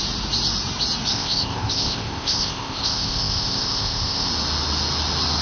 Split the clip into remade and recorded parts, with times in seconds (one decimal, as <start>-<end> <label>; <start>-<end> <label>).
0.0-1.1 recorded; 1.1-4.3 remade; 4.3-5.4 recorded